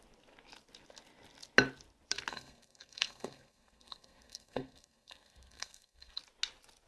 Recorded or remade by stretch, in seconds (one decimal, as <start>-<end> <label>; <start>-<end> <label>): 0.0-2.3 recorded; 2.3-6.2 remade; 6.2-6.9 recorded

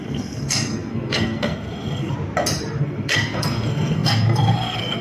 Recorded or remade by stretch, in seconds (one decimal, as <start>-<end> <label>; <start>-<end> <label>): 0.0-2.1 remade; 2.1-2.8 recorded; 2.8-5.0 remade

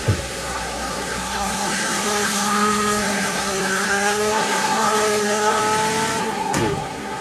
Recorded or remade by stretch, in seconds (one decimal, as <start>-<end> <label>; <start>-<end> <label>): 0.0-5.6 remade; 5.6-6.2 recorded; 6.2-7.2 remade

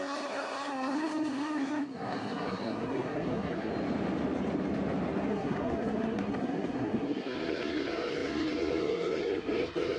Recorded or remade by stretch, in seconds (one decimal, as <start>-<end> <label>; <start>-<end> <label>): 0.0-3.7 remade; 3.7-5.3 recorded; 5.3-10.0 remade

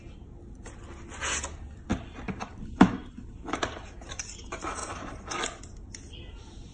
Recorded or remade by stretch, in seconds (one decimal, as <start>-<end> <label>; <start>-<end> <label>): 0.0-6.7 recorded

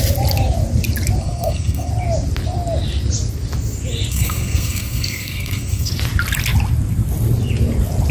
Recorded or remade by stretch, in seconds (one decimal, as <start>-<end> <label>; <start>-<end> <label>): 0.0-1.2 recorded; 1.2-1.9 remade; 1.9-4.1 recorded; 4.1-5.9 remade; 5.9-8.1 recorded

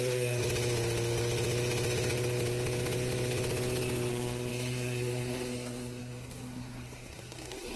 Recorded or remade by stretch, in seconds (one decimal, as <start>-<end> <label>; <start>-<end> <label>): 0.0-0.4 remade; 0.4-4.1 recorded; 4.1-7.8 remade